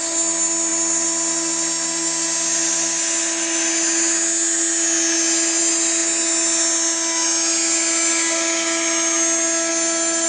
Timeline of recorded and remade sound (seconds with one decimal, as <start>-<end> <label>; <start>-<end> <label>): 0.0-10.3 recorded